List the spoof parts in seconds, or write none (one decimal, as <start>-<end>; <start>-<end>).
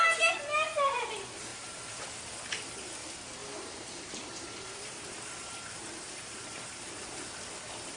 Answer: 1.5-2.1; 3.4-7.1